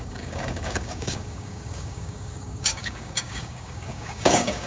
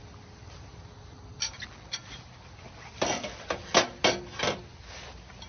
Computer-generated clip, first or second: first